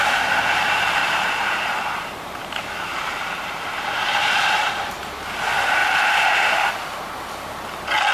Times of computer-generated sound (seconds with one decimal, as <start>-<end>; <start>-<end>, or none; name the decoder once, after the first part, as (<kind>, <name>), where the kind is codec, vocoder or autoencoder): 1.0-5.2 (vocoder, BigVGAN v2); 5.8-6.7